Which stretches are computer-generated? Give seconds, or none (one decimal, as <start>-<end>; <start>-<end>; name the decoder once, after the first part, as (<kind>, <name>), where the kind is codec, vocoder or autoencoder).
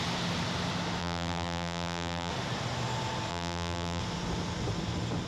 1.0-2.3 (vocoder, BigVGAN v2); 3.3-4.0